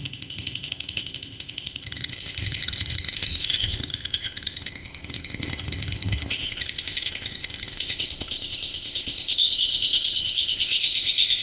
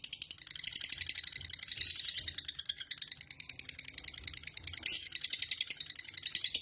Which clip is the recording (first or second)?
second